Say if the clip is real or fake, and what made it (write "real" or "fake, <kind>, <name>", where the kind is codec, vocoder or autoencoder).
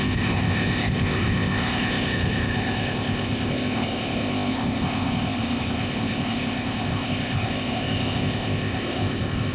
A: fake, codec, ZipCodec